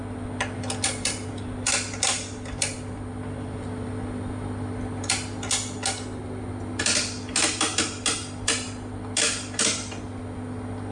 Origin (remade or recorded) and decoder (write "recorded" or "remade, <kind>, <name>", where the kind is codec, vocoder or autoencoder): recorded